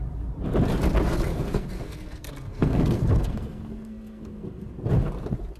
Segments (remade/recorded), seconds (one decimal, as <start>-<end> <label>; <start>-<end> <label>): 0.0-1.3 recorded; 1.3-4.7 remade; 4.7-5.6 recorded